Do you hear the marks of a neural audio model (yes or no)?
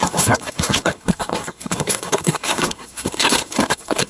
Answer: yes